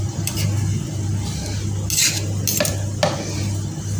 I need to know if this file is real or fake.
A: real